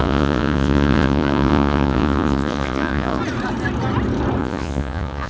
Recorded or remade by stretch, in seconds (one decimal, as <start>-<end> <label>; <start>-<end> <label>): 0.0-3.2 remade; 3.2-4.4 recorded; 4.4-5.3 remade